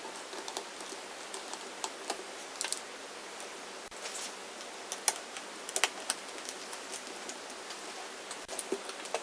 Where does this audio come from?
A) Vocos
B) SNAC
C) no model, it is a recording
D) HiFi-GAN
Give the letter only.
C